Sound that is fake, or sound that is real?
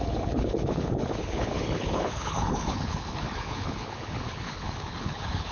fake